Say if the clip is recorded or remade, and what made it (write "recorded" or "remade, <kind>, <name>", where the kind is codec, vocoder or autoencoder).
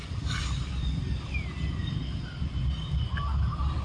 recorded